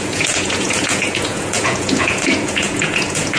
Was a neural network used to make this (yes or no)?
yes